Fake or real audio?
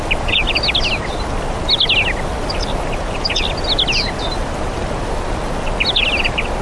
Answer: real